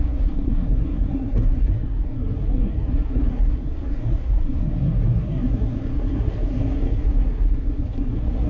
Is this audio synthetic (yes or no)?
yes